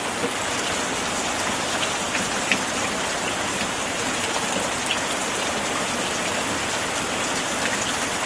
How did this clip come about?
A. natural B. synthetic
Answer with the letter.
A